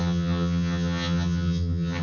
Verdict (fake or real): fake